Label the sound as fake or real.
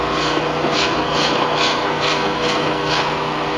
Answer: fake